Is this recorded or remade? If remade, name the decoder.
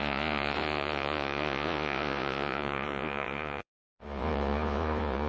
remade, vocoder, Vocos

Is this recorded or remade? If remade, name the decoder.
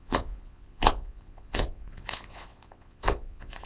remade, vocoder, Vocos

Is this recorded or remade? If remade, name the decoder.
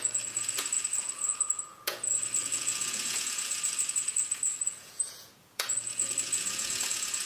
remade, vocoder, Vocos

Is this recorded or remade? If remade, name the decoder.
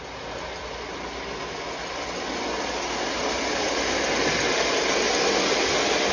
recorded